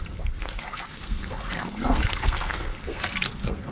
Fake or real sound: fake